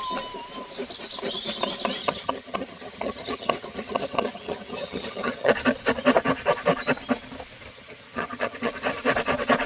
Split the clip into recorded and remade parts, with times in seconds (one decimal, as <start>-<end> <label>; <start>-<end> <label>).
0.0-2.0 recorded; 2.0-5.5 remade; 5.5-7.7 recorded; 7.7-8.7 remade; 8.7-9.7 recorded